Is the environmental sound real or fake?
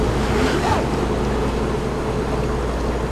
real